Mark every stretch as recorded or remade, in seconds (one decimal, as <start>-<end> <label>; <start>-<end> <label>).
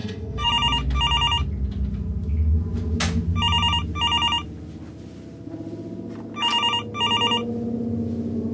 0.0-0.5 remade; 0.5-8.5 recorded